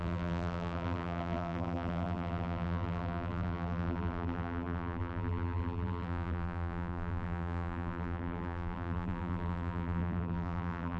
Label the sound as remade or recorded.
remade